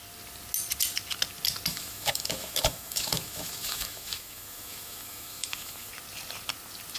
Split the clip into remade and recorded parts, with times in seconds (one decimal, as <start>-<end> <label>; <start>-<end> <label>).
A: 0.0-1.7 recorded; 1.7-5.9 remade; 5.9-7.0 recorded